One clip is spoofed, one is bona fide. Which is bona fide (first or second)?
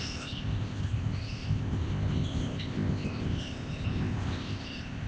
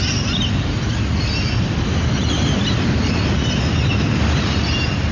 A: second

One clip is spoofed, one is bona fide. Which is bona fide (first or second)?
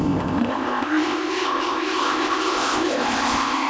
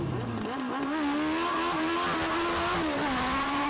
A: second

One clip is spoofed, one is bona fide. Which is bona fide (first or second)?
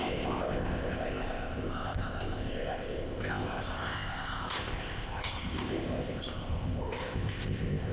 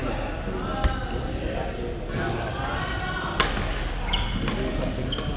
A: second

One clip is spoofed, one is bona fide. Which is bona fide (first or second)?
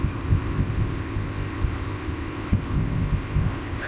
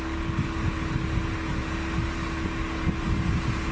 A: second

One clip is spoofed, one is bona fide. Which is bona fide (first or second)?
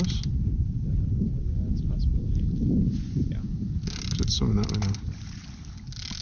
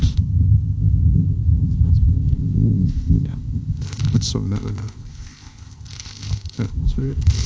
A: first